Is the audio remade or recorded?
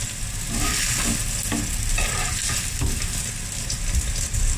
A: recorded